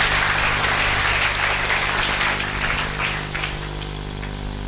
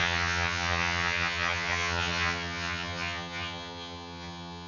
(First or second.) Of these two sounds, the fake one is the second